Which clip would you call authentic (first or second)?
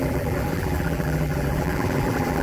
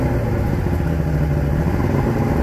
second